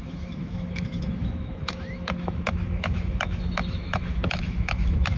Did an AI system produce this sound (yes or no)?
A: yes